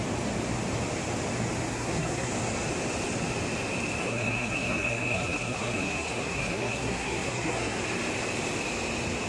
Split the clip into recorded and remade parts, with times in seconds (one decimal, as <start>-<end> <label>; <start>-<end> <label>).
0.0-1.7 recorded; 1.7-2.3 remade; 2.3-4.0 recorded; 4.0-7.8 remade; 7.8-9.3 recorded